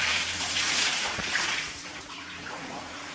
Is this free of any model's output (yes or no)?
no